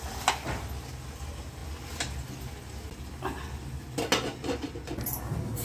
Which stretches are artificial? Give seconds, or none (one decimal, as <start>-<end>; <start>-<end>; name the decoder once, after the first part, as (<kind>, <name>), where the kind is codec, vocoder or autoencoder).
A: none